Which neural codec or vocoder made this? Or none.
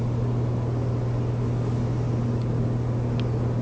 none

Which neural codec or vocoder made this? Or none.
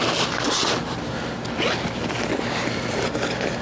none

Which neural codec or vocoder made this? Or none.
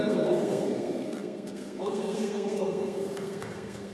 codec, SNAC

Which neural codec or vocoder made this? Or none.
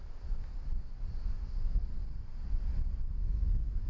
none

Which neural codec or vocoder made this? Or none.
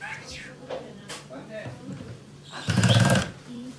vocoder, BigVGAN v2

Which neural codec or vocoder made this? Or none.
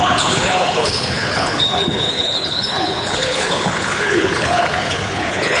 codec, HILCodec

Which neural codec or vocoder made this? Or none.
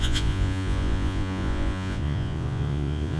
vocoder, Vocos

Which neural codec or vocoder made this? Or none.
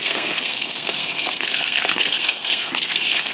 codec, SNAC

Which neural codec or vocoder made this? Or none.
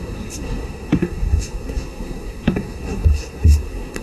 codec, SNAC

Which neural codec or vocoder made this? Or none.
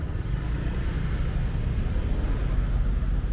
none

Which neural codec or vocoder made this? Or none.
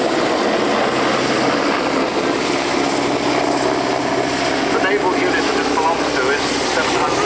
none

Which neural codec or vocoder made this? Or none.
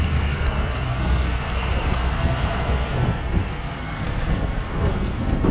codec, SNAC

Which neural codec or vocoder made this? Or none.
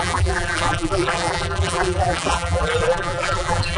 vocoder, BigVGAN v2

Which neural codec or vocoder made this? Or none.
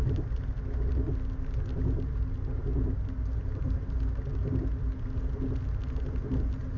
none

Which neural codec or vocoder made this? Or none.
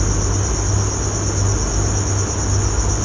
none